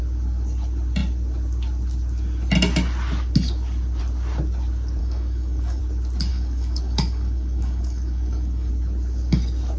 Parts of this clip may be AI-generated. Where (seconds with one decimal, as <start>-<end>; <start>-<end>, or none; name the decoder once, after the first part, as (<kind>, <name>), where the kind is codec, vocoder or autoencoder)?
5.0-5.8 (codec, DAC); 6.3-8.7